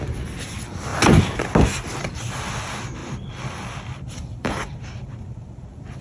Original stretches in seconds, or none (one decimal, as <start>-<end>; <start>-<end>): 0.0-3.0